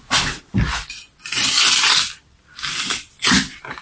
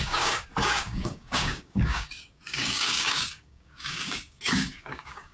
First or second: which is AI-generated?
second